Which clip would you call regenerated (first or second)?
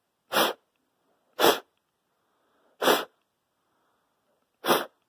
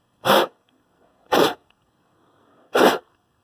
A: second